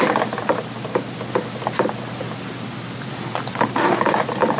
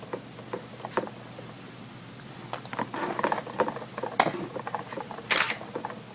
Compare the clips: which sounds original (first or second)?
first